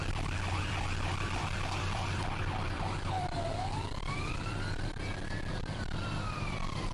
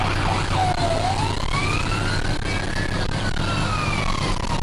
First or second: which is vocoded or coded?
first